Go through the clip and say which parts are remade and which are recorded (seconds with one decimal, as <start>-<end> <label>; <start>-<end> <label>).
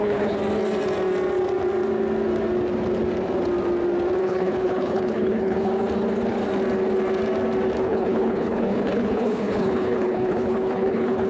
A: 0.0-0.4 remade; 0.4-4.2 recorded; 4.2-5.7 remade; 5.7-7.8 recorded; 7.8-11.3 remade